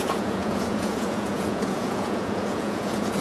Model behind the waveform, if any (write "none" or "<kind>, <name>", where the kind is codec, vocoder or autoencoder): vocoder, Vocos